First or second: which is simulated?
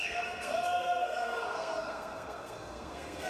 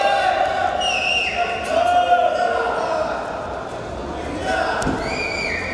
first